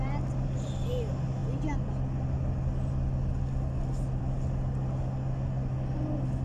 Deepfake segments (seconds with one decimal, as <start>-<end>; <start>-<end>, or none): none